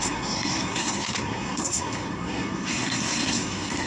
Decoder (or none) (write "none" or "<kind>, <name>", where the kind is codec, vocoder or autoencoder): codec, SNAC